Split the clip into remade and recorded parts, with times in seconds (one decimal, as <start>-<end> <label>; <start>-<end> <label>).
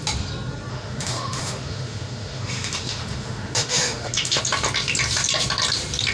0.0-0.7 recorded; 0.7-4.4 remade; 4.4-6.1 recorded